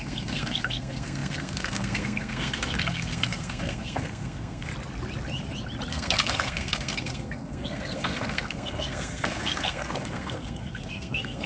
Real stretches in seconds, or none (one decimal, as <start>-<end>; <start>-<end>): 4.7-5.9